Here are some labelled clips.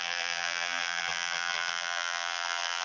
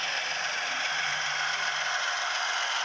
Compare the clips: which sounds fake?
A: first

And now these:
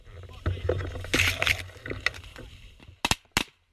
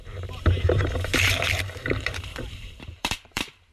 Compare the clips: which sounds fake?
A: second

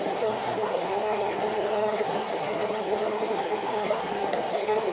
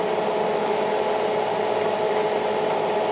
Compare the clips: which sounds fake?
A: first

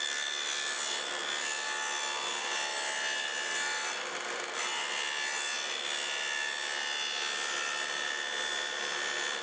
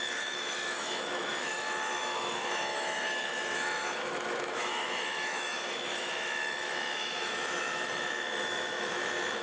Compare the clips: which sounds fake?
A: second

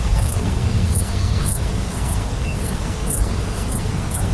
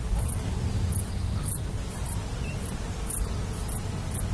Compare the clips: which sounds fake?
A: first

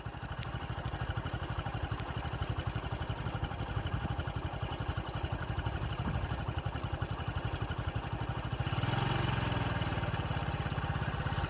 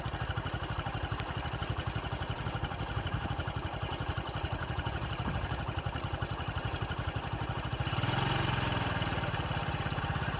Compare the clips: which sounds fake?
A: second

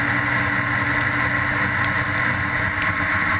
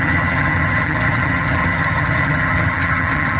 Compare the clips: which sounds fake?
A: second